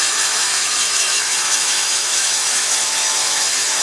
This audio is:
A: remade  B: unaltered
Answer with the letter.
A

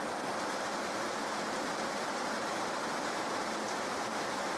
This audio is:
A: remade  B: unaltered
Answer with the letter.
B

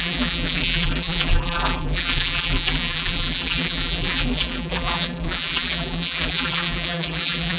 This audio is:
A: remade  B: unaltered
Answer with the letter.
A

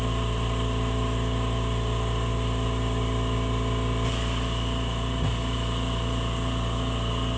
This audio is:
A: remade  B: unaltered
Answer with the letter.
B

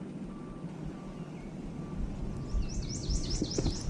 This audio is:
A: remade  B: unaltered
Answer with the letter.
B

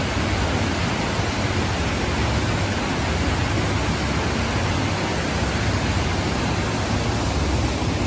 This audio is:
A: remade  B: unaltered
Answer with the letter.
B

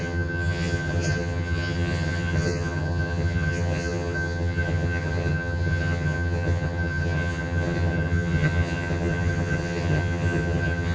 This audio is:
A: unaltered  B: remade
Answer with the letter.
B